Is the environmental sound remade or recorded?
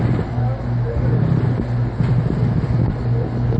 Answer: recorded